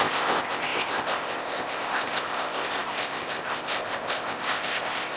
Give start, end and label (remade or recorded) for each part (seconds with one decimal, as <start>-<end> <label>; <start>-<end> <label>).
0.0-5.2 remade